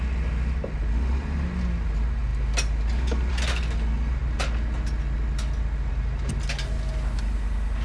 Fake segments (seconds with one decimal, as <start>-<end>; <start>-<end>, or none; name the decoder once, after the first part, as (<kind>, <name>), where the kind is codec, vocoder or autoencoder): none